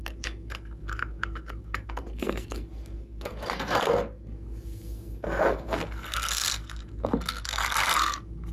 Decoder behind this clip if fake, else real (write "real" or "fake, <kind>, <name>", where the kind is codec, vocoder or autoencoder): fake, codec, SNAC